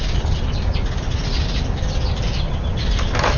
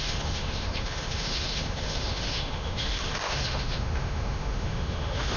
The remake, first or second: second